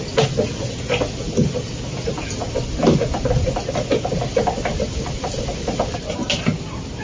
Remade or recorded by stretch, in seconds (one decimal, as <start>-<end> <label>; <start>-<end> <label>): 0.0-7.0 recorded